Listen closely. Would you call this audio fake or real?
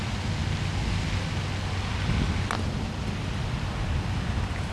real